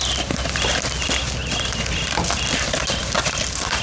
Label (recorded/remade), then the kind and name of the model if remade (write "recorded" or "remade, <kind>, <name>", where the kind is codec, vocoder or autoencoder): recorded